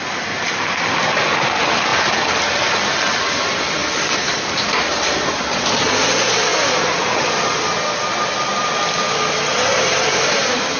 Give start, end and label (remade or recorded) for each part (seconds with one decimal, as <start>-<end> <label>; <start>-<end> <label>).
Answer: 0.0-3.8 recorded; 3.8-4.4 remade; 4.4-10.8 recorded